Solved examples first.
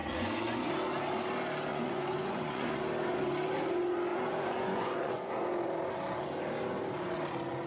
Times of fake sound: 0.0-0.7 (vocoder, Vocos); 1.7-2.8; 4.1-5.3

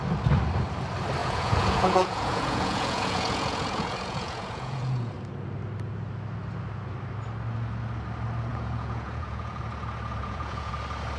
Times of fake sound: 1.2-5.1 (vocoder, Vocos); 8.5-9.6; 10.2-10.7

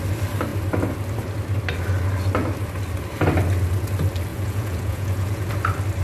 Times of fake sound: 4.3-5.5 (vocoder, Vocos)